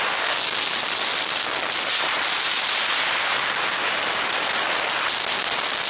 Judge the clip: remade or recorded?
recorded